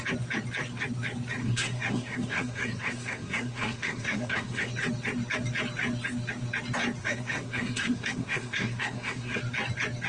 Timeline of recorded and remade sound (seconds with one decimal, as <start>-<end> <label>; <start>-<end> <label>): 0.0-1.4 recorded; 1.4-4.7 remade; 4.7-7.0 recorded; 7.0-9.4 remade; 9.4-10.1 recorded